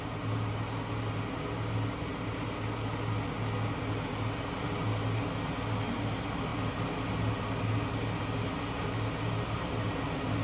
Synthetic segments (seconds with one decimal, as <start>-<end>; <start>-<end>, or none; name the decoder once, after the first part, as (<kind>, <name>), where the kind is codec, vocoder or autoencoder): none